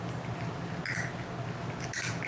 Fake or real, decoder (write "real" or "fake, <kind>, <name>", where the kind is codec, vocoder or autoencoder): real